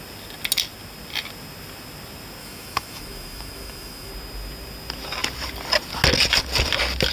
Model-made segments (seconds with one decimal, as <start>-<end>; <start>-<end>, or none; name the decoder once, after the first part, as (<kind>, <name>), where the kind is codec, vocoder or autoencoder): 2.4-4.1 (autoencoder, DAC-VAE)